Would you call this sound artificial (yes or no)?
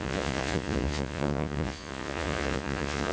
yes